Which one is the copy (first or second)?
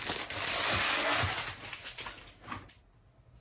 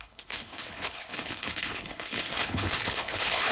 second